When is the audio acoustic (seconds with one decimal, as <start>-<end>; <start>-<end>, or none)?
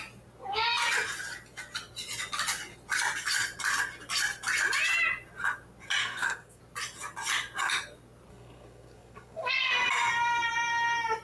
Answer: 0.0-6.0; 6.6-8.3; 9.9-11.2